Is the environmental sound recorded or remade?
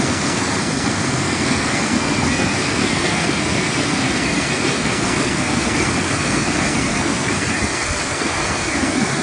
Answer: remade